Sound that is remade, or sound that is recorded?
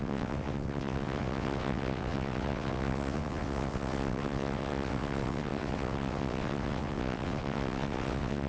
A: remade